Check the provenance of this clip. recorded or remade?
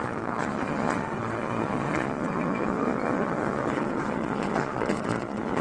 remade